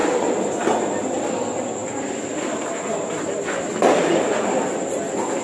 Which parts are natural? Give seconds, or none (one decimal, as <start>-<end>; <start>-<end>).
0.0-5.4